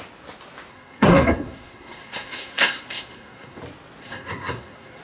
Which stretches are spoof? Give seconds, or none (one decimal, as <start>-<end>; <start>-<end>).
0.7-3.6; 4.0-5.0